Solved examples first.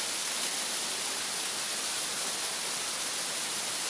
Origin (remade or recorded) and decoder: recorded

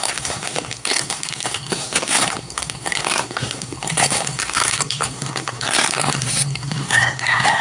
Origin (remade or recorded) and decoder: remade, codec, SNAC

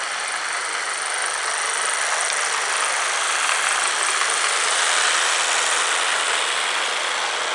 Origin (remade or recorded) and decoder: recorded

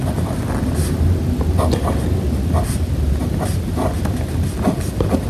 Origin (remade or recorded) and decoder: recorded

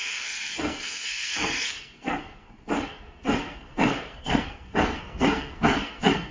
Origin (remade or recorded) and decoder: remade, codec, SNAC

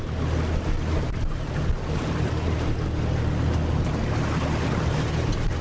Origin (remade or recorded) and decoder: recorded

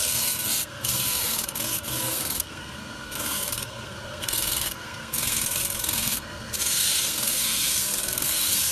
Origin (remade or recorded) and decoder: remade, codec, SNAC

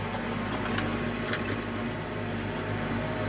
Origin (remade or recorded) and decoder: recorded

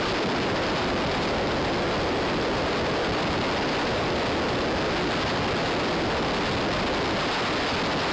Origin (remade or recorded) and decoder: recorded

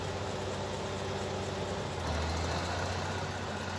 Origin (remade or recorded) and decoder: recorded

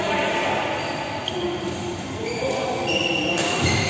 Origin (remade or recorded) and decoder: recorded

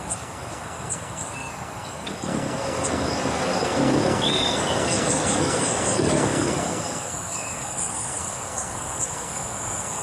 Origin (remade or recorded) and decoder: remade, codec, SNAC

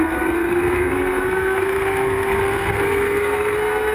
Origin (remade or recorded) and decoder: remade, codec, SNAC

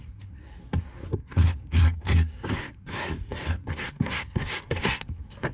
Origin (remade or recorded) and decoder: remade, codec, SNAC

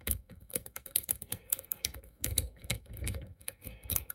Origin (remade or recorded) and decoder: remade, codec, SNAC